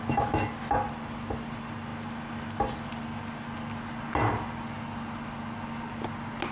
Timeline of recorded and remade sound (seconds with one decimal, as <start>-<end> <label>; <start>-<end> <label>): 0.0-6.5 recorded